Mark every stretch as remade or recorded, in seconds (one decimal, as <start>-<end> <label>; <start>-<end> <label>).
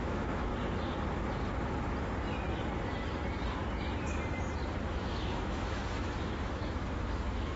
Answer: 0.0-0.5 remade; 0.5-4.9 recorded; 4.9-7.6 remade